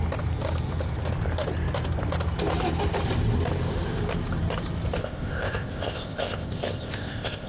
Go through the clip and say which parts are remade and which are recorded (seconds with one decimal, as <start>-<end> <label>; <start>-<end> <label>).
0.0-5.0 recorded; 5.0-7.5 remade